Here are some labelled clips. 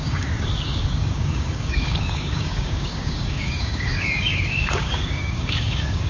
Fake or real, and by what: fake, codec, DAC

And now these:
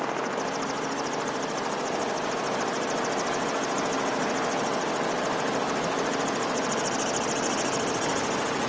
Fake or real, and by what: real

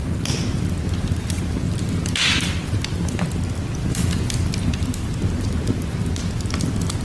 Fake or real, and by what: real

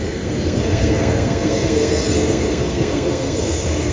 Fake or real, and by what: fake, codec, SNAC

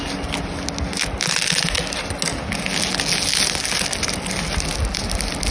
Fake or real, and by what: real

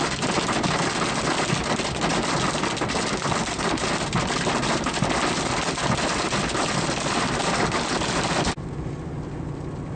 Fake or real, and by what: real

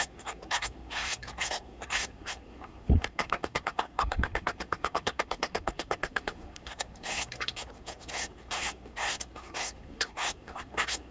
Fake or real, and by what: fake, codec, SNAC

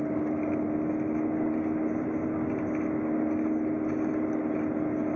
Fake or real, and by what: real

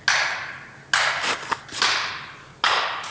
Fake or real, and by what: real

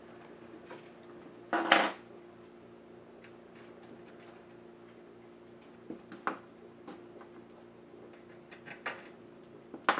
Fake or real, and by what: real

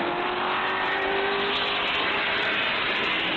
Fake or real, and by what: real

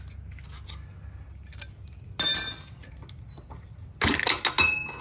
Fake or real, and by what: real